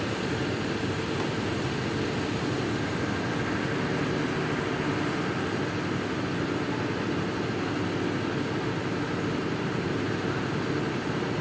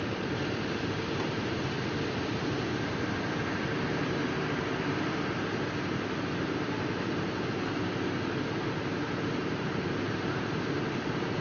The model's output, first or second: second